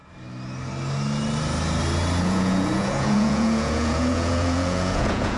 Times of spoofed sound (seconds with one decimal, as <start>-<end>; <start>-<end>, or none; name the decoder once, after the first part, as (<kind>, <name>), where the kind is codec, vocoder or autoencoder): 2.2-5.4 (vocoder, Vocos)

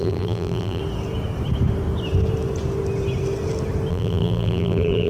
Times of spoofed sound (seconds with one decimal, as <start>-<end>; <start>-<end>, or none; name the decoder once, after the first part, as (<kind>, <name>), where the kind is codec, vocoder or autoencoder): 0.0-0.8 (vocoder, BigVGAN v2); 3.9-5.1

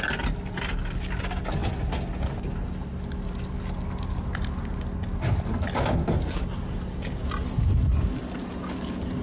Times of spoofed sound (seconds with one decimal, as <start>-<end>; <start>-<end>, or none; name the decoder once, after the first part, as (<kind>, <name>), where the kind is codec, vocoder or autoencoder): none